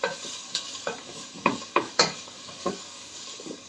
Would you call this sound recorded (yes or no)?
no